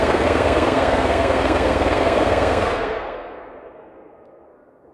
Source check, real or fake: fake